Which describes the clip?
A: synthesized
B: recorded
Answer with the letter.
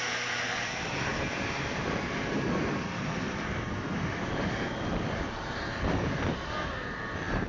A